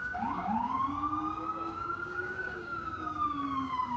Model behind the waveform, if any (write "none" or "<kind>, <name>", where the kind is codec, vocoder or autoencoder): codec, DAC